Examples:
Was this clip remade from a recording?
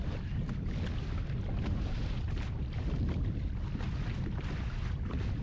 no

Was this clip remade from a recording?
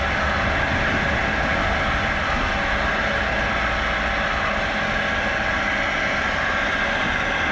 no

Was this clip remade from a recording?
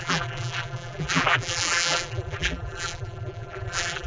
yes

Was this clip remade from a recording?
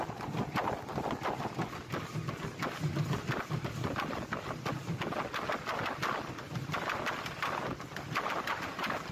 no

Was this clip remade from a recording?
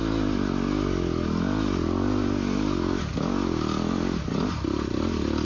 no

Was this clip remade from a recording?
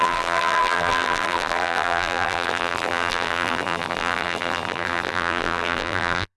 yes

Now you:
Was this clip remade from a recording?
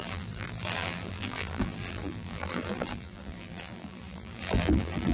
yes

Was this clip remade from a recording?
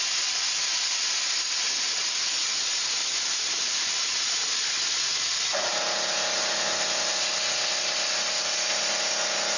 no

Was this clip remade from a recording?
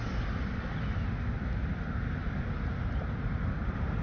no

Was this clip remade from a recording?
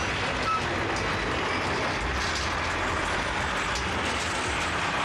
no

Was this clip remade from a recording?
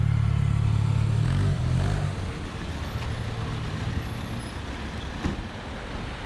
no